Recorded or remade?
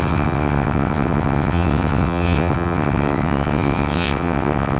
remade